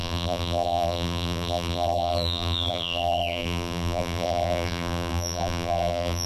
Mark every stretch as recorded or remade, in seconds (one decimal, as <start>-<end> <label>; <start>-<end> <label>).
0.0-6.3 remade